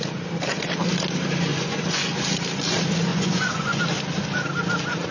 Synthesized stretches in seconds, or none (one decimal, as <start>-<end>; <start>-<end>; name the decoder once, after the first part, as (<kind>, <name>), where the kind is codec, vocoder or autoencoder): 1.5-2.1 (vocoder, Vocos); 3.1-3.8